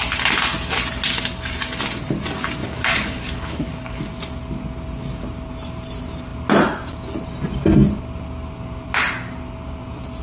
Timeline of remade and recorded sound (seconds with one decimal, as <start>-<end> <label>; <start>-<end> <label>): 0.0-2.6 recorded; 2.6-4.0 remade; 4.0-10.2 recorded